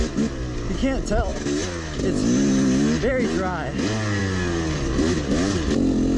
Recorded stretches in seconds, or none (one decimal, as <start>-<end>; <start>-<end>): 0.0-6.2